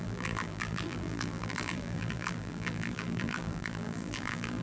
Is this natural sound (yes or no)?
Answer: no